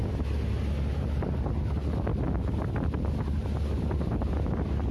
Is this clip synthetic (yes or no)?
no